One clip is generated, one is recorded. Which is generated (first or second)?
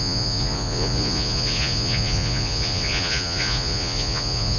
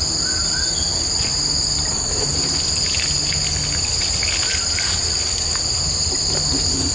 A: first